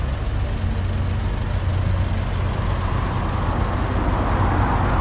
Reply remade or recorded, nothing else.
recorded